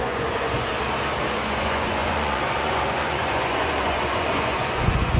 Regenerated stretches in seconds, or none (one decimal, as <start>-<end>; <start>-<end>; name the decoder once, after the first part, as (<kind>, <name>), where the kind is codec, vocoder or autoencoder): 0.0-0.7 (vocoder, Vocos); 1.3-5.2